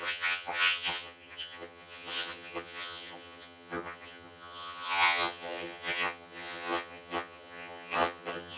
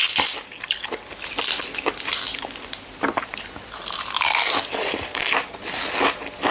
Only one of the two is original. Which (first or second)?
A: second